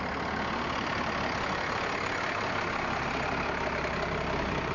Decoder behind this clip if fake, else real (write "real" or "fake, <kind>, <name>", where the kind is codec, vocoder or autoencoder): real